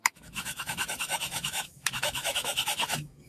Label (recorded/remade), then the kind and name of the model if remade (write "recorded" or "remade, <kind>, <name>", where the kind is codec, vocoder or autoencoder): remade, autoencoder, DAC-VAE